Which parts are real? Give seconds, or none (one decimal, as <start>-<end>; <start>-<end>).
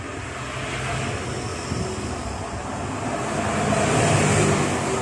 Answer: 0.0-5.0